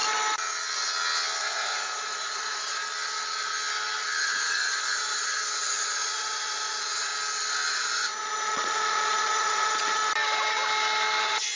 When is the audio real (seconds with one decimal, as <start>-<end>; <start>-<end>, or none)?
0.0-1.4; 2.8-4.2; 7.1-7.7; 10.0-11.2